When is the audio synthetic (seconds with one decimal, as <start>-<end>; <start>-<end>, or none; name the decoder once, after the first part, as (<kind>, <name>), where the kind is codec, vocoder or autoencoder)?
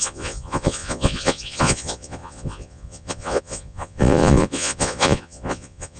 0.0-6.0 (vocoder, Vocos)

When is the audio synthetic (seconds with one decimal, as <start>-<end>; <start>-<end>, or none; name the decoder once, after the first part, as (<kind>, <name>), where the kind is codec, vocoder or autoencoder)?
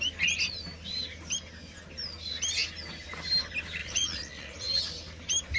3.8-4.8 (vocoder, Vocos)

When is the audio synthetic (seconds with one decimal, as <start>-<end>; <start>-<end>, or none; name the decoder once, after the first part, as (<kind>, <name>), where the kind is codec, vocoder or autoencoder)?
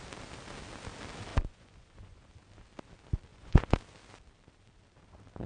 1.3-2.3 (vocoder, Vocos); 3.3-3.8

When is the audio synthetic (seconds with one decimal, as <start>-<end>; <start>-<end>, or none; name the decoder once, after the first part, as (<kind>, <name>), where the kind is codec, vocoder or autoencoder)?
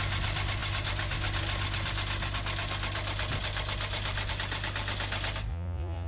5.5-6.1 (vocoder, Vocos)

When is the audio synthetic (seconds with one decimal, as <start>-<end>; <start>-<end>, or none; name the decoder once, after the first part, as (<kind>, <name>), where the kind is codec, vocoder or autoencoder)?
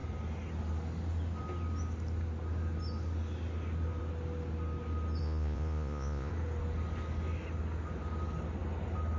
5.2-6.3 (vocoder, Vocos)